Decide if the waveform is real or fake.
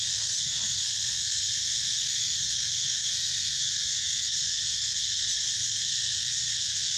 fake